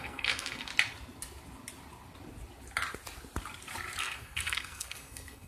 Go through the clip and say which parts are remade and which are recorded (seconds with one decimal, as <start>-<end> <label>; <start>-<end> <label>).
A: 0.0-0.7 remade; 0.7-4.0 recorded; 4.0-5.5 remade

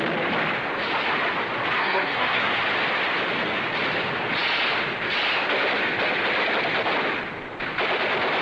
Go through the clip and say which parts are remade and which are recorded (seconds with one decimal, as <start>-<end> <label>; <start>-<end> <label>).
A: 0.0-1.8 recorded; 1.8-2.5 remade; 2.5-8.4 recorded

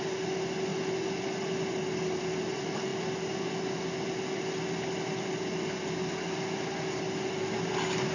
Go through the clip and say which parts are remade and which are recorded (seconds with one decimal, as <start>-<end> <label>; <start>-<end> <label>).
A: 0.0-8.1 recorded

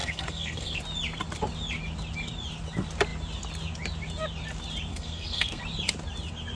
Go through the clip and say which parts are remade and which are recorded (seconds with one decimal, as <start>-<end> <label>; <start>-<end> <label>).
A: 0.0-0.8 remade; 0.8-4.9 recorded; 4.9-5.6 remade; 5.6-6.5 recorded